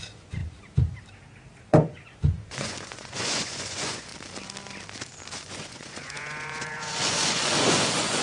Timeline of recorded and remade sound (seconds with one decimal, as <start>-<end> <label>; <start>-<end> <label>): 0.0-0.4 remade; 0.4-1.6 recorded; 1.6-4.1 remade; 4.1-5.4 recorded; 5.4-8.2 remade